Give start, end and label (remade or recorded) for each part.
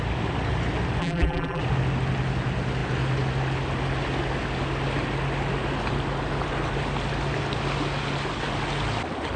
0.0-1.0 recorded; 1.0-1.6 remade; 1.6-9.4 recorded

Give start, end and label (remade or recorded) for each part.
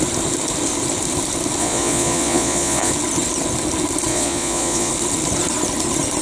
0.0-1.6 recorded; 1.6-2.9 remade; 2.9-4.1 recorded; 4.1-4.9 remade; 4.9-6.2 recorded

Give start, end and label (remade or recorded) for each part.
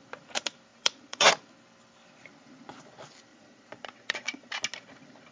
0.0-0.7 recorded; 0.7-1.3 remade; 1.3-3.3 recorded; 3.3-4.5 remade; 4.5-5.3 recorded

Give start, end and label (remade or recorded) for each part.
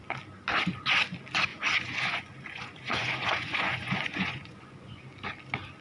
0.0-1.5 recorded; 1.5-5.0 remade; 5.0-5.8 recorded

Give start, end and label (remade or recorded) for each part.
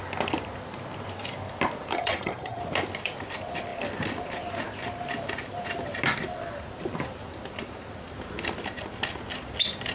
0.0-1.9 recorded; 1.9-2.6 remade; 2.6-9.9 recorded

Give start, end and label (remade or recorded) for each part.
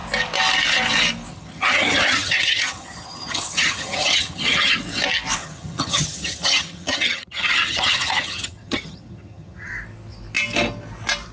0.0-1.3 recorded; 1.3-4.8 remade; 4.8-5.4 recorded; 5.4-9.7 remade; 9.7-11.3 recorded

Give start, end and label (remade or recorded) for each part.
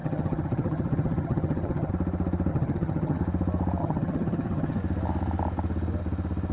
0.0-1.9 remade; 1.9-2.5 recorded; 2.5-3.2 remade; 3.2-3.8 recorded; 3.8-4.8 remade; 4.8-6.5 recorded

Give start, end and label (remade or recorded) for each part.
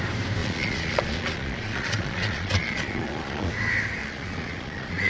0.0-0.4 recorded; 0.4-3.5 remade; 3.5-4.0 recorded; 4.0-5.1 remade